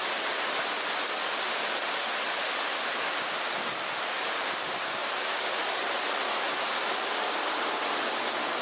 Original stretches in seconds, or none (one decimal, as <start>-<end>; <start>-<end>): 0.0-8.6